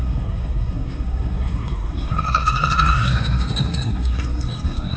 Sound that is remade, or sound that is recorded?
remade